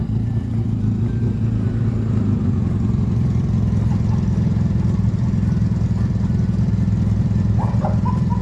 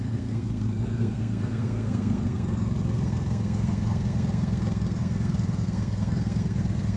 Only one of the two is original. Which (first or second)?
first